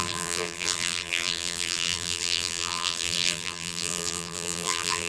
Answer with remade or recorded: remade